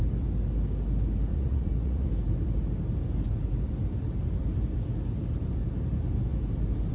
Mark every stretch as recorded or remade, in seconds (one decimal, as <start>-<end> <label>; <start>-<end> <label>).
0.0-1.3 recorded; 1.3-2.1 remade; 2.1-6.9 recorded